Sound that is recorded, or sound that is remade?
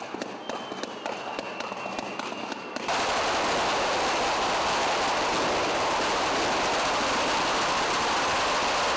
recorded